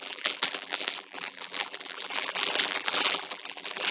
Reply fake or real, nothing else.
fake